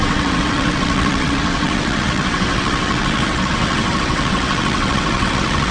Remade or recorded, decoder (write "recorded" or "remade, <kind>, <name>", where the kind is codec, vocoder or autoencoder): remade, vocoder, WaveNeXt